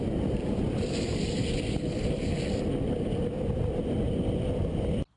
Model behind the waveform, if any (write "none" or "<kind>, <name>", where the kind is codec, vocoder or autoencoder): none